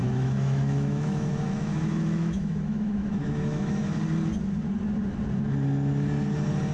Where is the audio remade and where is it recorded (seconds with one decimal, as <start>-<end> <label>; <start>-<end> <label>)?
0.0-4.0 remade; 4.0-6.7 recorded